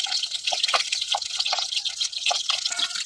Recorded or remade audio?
remade